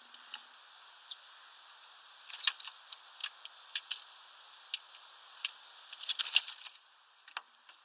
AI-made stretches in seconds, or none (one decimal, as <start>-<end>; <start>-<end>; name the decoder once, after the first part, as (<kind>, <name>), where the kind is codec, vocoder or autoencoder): none